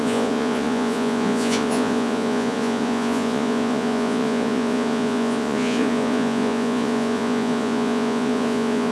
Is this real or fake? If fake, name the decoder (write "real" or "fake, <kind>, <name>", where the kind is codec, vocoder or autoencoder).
fake, vocoder, Vocos